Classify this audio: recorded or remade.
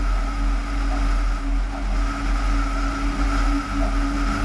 recorded